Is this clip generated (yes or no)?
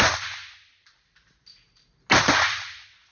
no